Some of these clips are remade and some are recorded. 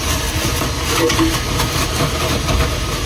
recorded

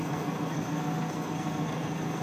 remade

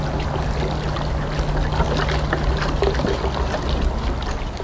recorded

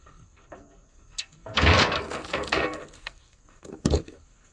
remade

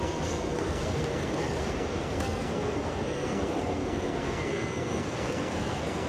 remade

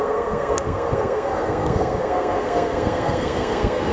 remade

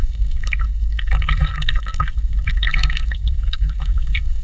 remade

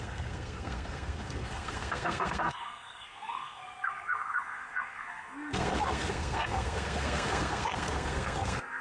remade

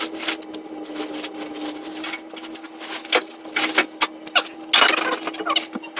recorded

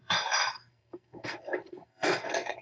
remade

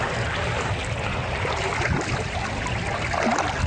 recorded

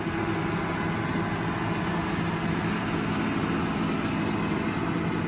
recorded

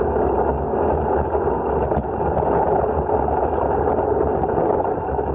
recorded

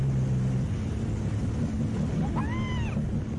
recorded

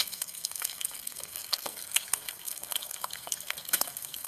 remade